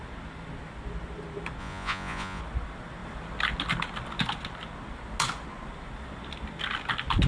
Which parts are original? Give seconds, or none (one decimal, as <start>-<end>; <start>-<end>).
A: 0.0-1.6; 2.4-7.3